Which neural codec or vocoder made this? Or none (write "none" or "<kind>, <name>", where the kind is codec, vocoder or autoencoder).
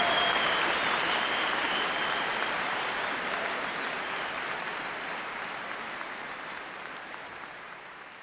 vocoder, BigVGAN v2